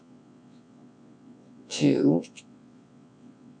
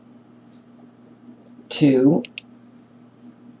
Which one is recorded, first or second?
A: second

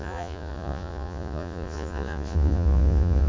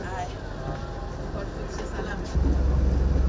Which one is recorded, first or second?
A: second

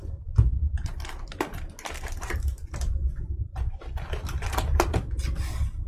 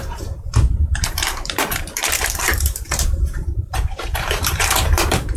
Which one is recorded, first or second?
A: first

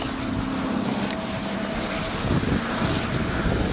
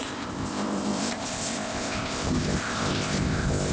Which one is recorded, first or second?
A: first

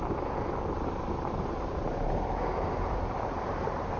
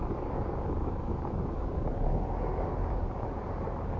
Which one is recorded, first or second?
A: first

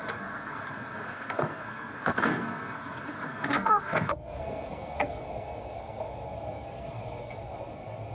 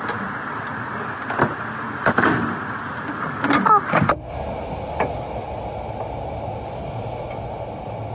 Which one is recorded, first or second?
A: second